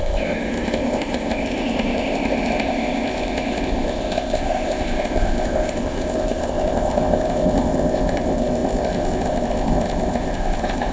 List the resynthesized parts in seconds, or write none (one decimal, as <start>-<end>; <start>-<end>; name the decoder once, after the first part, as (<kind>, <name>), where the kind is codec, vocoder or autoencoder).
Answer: 0.0-10.9 (codec, ZipCodec)